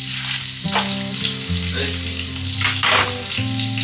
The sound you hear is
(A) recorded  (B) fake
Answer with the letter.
A